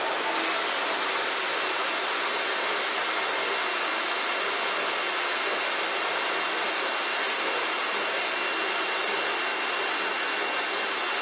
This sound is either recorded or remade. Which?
recorded